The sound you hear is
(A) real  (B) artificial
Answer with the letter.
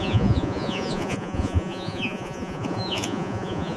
B